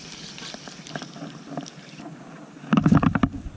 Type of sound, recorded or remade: recorded